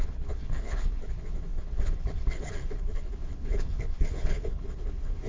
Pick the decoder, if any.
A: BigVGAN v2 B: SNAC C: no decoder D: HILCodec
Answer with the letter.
D